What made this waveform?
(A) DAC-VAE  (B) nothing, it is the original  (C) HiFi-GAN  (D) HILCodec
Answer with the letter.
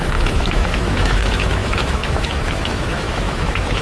A